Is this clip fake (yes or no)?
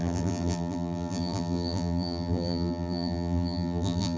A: yes